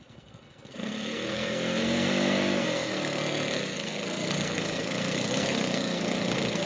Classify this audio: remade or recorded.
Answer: remade